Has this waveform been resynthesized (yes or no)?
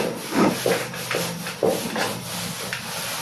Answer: no